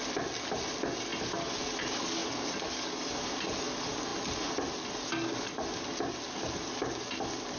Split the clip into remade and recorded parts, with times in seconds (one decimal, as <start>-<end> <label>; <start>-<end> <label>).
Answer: 0.0-7.6 recorded